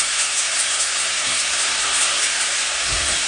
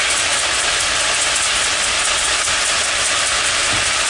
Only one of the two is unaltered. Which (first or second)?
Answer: second